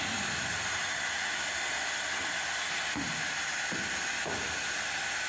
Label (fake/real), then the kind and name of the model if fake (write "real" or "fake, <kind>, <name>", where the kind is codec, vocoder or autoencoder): real